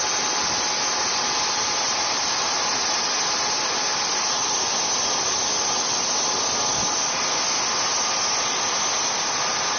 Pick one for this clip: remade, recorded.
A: recorded